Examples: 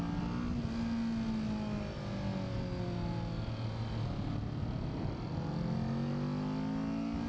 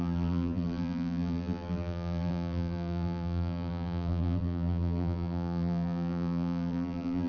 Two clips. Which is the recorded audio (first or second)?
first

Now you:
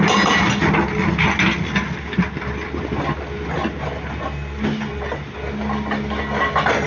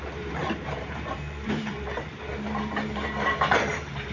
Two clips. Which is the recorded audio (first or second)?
first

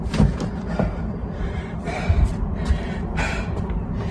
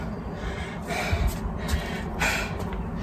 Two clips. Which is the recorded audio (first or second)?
second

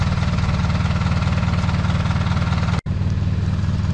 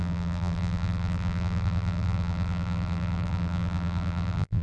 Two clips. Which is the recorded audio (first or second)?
first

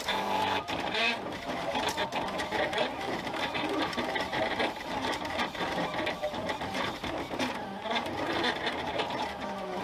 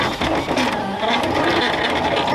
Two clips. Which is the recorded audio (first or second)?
second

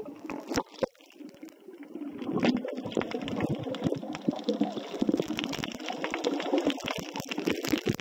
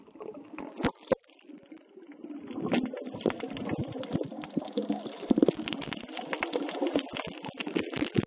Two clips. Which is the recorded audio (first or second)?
second